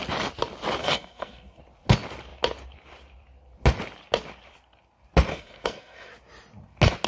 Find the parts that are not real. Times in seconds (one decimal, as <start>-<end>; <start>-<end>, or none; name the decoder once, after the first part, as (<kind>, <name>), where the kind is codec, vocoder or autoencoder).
0.8-1.6 (codec, SNAC); 5.3-6.1